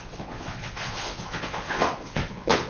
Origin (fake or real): fake